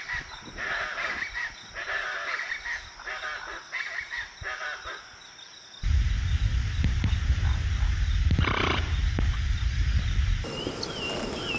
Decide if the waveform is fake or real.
real